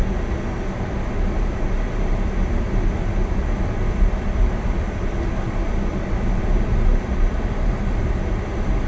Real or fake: real